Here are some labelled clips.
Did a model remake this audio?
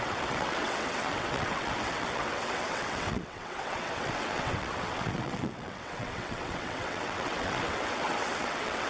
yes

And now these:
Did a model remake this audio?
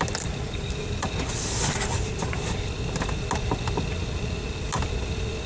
no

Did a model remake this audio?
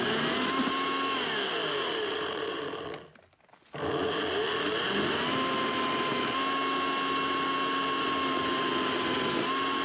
no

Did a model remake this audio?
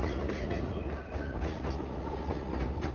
yes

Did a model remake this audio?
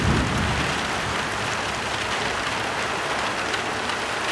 no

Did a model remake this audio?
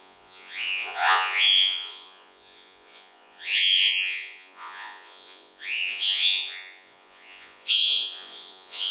yes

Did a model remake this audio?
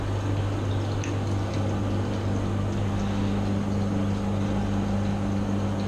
no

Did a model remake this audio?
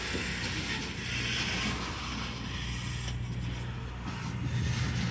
no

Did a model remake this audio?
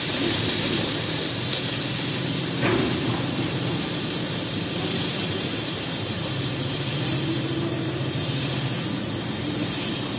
yes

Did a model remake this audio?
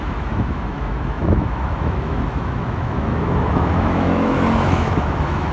yes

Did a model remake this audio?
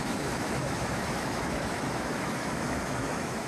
yes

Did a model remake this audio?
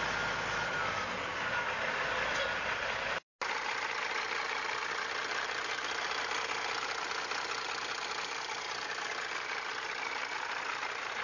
no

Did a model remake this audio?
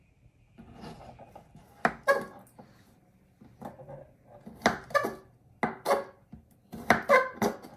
no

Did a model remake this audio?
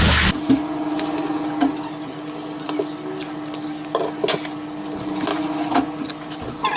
no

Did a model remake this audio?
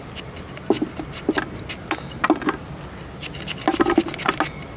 no